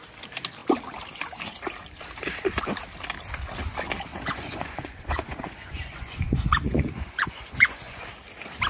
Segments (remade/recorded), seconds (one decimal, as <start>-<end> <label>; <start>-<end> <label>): 0.0-4.1 recorded; 4.1-8.0 remade; 8.0-8.7 recorded